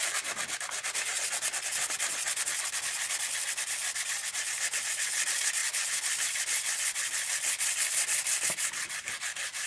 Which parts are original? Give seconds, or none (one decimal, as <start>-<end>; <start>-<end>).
0.0-9.7